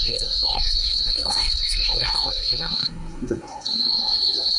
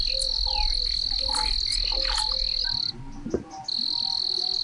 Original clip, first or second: second